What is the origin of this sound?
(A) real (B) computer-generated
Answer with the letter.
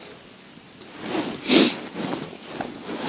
A